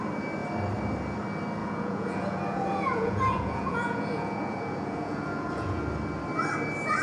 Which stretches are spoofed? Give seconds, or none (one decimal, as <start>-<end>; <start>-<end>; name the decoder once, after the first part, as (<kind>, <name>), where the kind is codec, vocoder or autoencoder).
1.6-5.8 (vocoder, Vocos)